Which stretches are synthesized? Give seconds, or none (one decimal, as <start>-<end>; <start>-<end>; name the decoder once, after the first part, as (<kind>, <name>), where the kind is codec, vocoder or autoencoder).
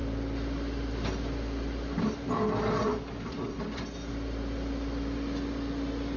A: 2.9-3.5 (codec, DAC)